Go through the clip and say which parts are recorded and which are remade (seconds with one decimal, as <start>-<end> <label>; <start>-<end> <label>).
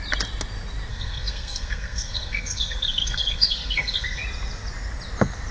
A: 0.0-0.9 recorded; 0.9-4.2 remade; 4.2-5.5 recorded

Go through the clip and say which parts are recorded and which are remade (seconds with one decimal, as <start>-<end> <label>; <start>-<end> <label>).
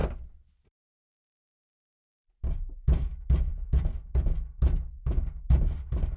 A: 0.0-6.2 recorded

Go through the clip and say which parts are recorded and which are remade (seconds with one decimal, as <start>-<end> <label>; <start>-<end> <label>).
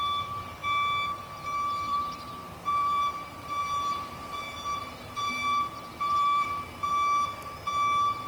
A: 0.0-1.9 recorded; 1.9-6.8 remade; 6.8-8.3 recorded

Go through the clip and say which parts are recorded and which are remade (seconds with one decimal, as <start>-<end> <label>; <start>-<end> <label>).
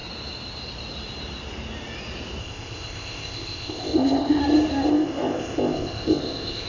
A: 0.0-2.4 recorded; 2.4-4.4 remade; 4.4-4.9 recorded; 4.9-6.7 remade